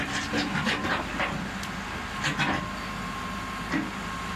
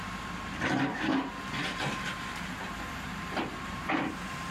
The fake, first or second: second